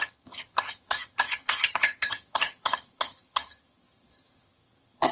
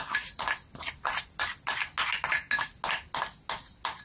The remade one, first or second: first